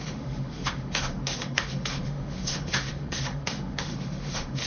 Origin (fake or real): fake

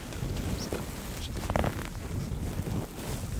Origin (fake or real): real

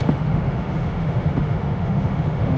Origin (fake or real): fake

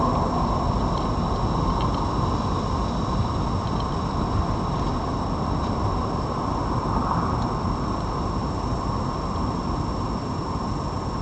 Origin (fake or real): real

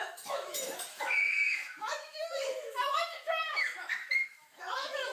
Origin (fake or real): fake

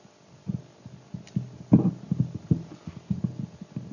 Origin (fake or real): real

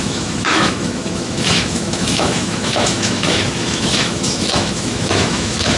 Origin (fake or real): fake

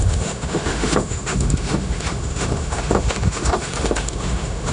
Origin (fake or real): fake